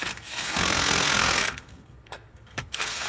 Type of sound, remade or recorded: remade